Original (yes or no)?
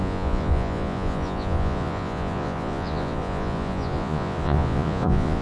no